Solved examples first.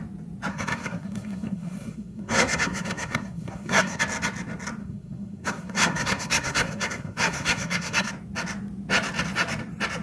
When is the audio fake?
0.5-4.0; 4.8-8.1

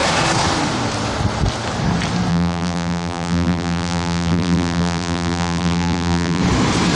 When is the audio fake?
2.3-6.4

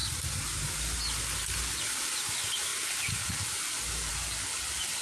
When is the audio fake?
none

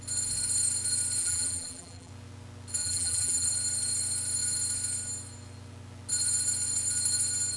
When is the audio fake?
1.2-2.1; 2.8-3.5

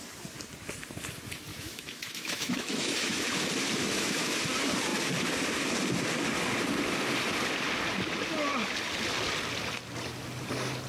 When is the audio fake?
1.5-3.2; 3.8-4.4

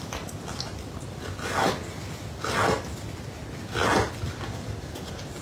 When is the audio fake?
none

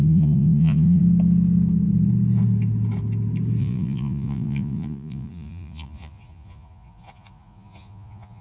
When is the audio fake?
0.0-1.0; 3.6-8.4